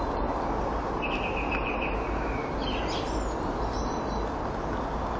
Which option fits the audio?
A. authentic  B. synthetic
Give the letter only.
A